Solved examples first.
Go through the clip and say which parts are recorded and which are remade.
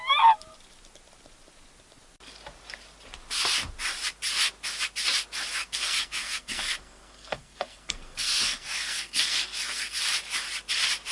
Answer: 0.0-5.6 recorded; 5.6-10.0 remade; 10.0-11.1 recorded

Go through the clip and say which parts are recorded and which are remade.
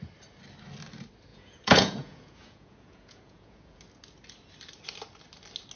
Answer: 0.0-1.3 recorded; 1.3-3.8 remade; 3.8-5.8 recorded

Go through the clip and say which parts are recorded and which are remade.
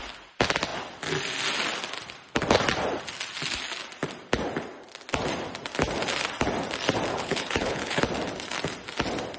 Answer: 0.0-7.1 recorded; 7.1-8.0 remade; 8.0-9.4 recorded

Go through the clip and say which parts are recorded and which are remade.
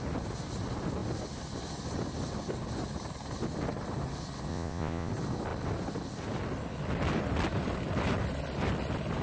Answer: 0.0-4.5 recorded; 4.5-5.1 remade; 5.1-9.2 recorded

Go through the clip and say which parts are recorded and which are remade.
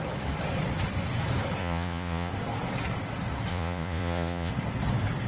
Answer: 0.0-1.6 recorded; 1.6-2.3 remade; 2.3-3.5 recorded; 3.5-4.5 remade; 4.5-5.3 recorded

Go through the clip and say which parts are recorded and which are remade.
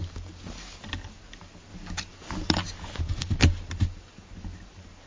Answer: 0.0-5.1 recorded